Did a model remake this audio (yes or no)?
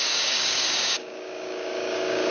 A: yes